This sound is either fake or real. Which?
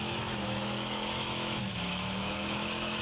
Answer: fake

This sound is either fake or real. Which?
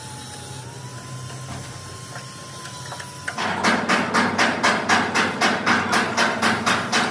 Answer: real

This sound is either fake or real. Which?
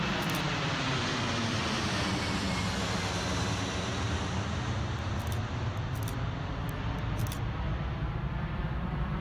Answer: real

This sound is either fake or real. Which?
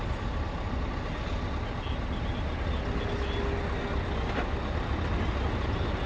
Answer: real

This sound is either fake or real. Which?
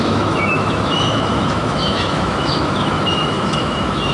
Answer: fake